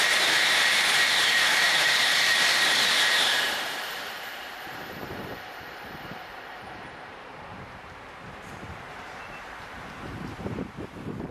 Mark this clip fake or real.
fake